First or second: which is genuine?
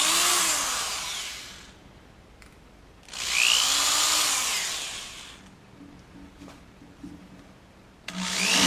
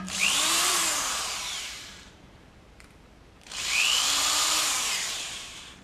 first